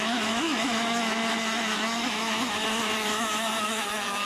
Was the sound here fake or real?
fake